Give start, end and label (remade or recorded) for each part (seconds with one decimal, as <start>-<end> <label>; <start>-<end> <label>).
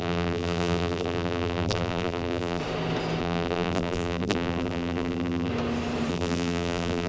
0.0-2.6 remade; 2.6-3.2 recorded; 3.2-5.5 remade; 5.5-6.1 recorded; 6.1-7.1 remade